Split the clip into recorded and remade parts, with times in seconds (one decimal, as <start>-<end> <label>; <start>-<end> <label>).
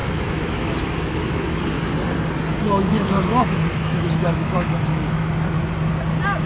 0.0-1.6 remade; 1.6-2.5 recorded; 2.5-5.3 remade; 5.3-6.5 recorded